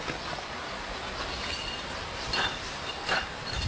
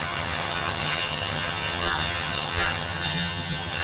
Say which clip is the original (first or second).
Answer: first